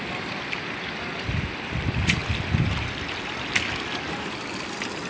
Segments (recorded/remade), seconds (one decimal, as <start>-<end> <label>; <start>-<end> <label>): 0.0-2.2 remade; 2.2-5.1 recorded